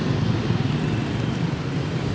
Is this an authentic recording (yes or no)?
no